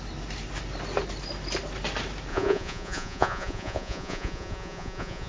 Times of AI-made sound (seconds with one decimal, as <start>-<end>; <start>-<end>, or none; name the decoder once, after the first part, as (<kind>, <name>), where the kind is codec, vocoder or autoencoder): 2.3-5.3 (vocoder, Vocos)